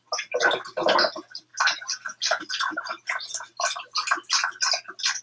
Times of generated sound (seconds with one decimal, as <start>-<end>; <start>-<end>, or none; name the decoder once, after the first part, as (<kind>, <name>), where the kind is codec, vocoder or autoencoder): none